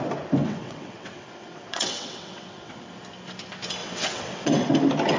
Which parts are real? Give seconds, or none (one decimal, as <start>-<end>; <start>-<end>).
0.0-0.4; 2.7-3.8; 4.7-5.2